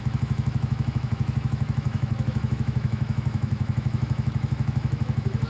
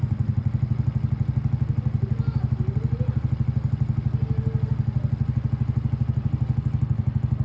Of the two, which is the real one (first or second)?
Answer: second